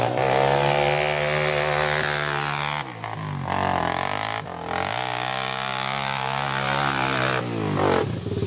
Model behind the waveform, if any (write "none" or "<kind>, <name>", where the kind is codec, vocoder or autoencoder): none